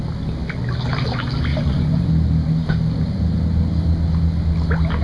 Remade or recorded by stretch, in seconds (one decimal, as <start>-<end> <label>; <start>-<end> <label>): 0.0-1.5 recorded; 1.5-2.1 remade; 2.1-5.0 recorded